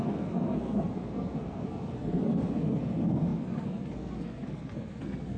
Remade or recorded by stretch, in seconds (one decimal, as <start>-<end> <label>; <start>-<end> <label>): 0.0-5.4 remade

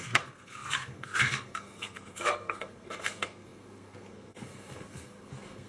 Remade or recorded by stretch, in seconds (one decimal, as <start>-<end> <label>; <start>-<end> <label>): 0.0-5.7 remade